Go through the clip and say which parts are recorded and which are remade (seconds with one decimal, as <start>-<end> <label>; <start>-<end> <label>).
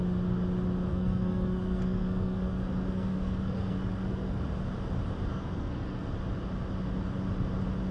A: 0.0-0.9 recorded; 0.9-4.4 remade; 4.4-5.3 recorded; 5.3-6.1 remade; 6.1-7.9 recorded